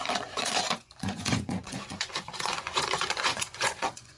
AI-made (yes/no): yes